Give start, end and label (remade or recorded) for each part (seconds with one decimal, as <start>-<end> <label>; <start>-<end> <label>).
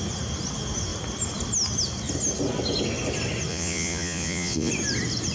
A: 0.0-3.5 recorded; 3.5-4.7 remade; 4.7-5.3 recorded